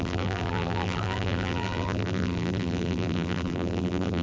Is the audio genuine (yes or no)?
no